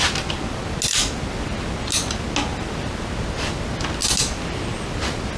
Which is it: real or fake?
real